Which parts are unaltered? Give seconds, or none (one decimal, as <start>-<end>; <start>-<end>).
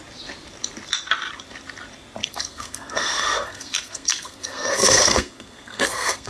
0.0-2.2